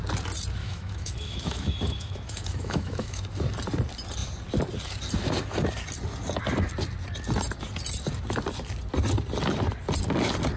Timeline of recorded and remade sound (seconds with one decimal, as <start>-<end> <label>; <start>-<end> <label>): 0.0-0.6 recorded; 0.6-3.2 remade; 3.2-10.6 recorded